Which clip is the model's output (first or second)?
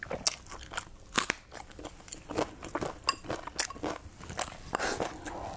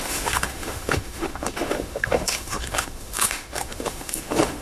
second